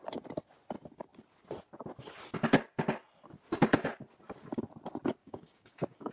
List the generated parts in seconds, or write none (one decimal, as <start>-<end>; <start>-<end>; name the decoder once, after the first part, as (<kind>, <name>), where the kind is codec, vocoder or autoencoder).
5.2-6.1 (codec, DAC)